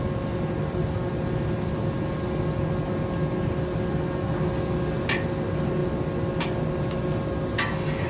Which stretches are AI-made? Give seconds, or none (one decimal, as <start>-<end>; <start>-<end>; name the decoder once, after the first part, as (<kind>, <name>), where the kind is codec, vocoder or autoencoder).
none